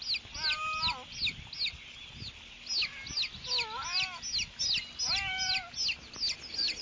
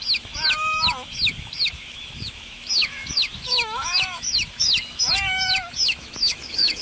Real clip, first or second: first